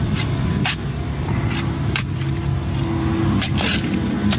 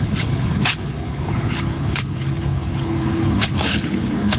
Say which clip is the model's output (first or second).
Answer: second